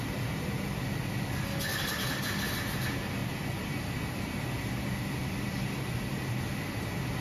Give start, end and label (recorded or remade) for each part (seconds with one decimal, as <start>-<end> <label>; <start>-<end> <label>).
0.0-1.7 recorded; 1.7-2.5 remade; 2.5-3.2 recorded; 3.2-3.7 remade; 3.7-5.2 recorded; 5.2-6.5 remade; 6.5-7.2 recorded